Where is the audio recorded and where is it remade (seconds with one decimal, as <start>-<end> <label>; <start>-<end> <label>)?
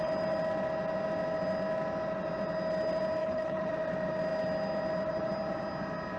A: 0.0-3.2 recorded; 3.2-3.7 remade; 3.7-6.2 recorded